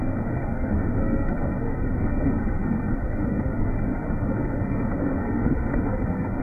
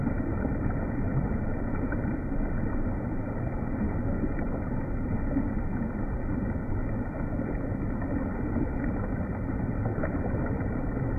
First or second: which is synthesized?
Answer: first